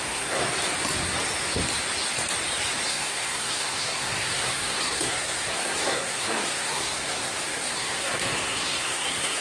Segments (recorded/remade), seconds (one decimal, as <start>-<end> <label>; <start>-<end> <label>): 0.0-0.4 remade; 0.4-2.9 recorded; 2.9-9.4 remade